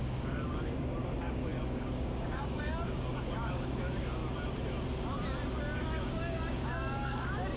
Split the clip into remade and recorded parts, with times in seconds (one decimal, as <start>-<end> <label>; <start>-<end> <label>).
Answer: 0.0-4.2 remade; 4.2-5.8 recorded; 5.8-7.6 remade